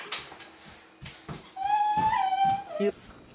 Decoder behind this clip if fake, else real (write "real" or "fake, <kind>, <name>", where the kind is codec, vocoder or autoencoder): real